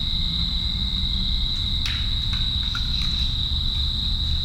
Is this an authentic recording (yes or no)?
yes